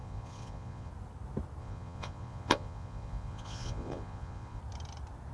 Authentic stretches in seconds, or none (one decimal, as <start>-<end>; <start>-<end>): 0.9-1.6; 4.6-5.3